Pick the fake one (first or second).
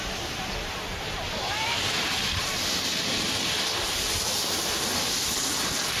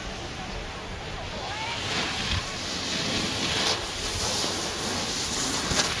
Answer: first